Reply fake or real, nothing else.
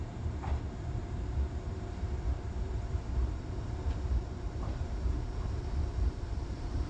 fake